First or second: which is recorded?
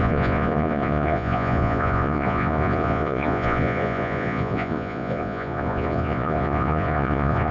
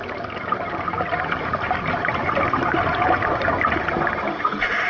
second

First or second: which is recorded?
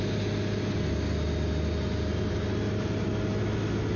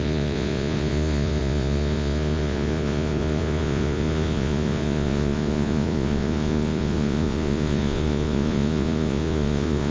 first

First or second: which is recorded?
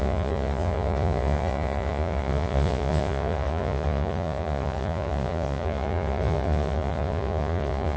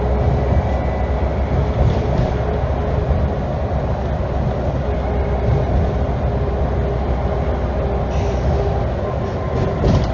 second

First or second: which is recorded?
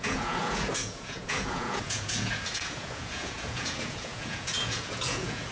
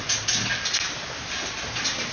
second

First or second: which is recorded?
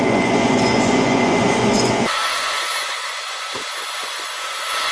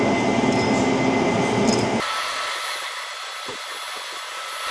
second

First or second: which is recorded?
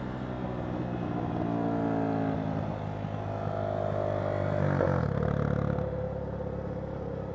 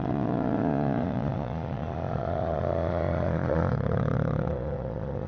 first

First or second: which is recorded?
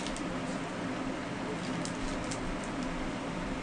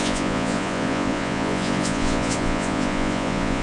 first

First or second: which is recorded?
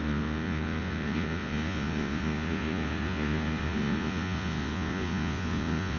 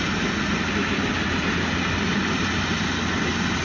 second